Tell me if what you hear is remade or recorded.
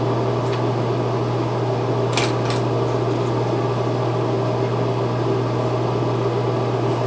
recorded